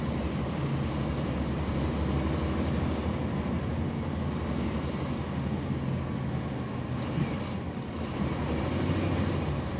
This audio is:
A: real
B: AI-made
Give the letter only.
A